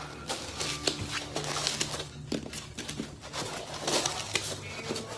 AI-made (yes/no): no